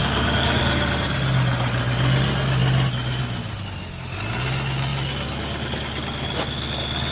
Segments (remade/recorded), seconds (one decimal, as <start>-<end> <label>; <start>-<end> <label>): 0.0-0.6 remade; 0.6-7.1 recorded

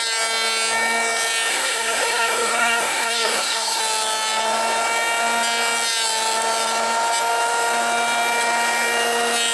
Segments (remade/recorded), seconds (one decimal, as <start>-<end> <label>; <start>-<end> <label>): 0.0-1.5 recorded; 1.5-3.8 remade; 3.8-9.5 recorded

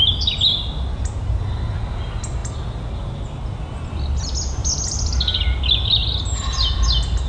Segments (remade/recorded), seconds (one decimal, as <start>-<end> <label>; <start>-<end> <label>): 0.0-4.6 recorded; 4.6-5.4 remade; 5.4-7.3 recorded